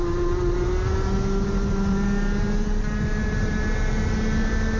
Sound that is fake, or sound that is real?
real